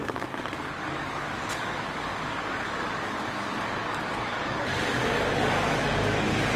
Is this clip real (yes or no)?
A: no